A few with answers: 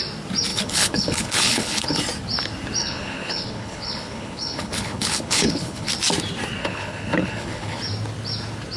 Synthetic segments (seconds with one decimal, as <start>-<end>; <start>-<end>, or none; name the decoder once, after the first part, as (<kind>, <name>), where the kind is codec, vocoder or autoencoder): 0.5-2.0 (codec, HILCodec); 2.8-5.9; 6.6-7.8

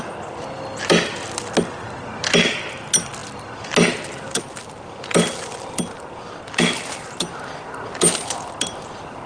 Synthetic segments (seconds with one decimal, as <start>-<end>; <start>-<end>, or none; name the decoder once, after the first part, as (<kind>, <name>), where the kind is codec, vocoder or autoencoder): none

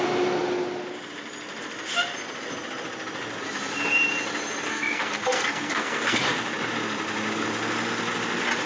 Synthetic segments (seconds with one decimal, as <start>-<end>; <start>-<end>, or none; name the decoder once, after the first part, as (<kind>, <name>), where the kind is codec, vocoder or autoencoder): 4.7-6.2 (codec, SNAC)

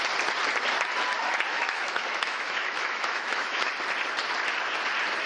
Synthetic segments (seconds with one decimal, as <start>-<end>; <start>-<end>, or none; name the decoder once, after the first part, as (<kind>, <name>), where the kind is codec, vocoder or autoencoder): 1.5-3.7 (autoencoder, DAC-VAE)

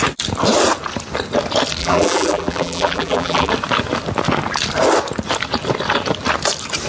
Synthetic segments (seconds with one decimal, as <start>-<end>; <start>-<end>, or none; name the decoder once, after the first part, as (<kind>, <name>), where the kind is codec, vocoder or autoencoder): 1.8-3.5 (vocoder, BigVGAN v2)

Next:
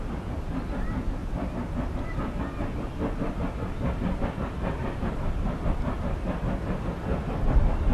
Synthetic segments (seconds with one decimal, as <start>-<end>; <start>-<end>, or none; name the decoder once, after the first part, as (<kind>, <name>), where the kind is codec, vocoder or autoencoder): none

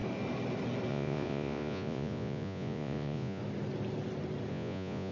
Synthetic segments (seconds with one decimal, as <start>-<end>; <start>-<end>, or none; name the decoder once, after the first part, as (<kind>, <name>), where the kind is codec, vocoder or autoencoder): 0.9-3.4 (vocoder, Vocos); 4.5-5.1